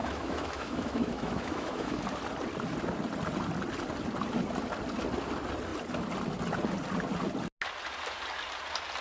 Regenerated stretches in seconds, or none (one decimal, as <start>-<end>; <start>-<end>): 0.0-2.0